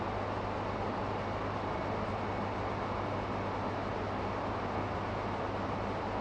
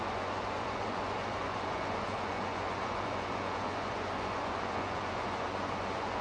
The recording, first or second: first